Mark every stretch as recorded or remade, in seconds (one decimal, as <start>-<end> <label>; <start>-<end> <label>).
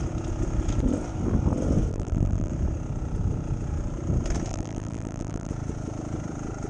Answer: 0.0-1.9 recorded; 1.9-2.5 remade; 2.5-4.5 recorded; 4.5-5.5 remade; 5.5-6.7 recorded